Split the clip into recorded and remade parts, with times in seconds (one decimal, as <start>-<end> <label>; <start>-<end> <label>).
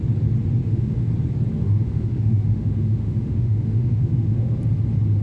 0.0-0.6 recorded; 0.6-1.1 remade; 1.1-1.5 recorded; 1.5-4.6 remade; 4.6-5.2 recorded